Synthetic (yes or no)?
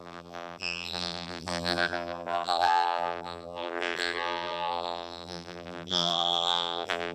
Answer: yes